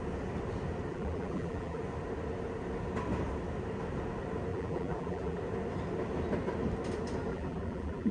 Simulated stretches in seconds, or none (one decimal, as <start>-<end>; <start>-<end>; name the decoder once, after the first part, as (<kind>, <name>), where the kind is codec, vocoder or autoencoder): 0.9-1.8 (vocoder, BigVGAN v2); 4.5-5.4; 7.3-8.1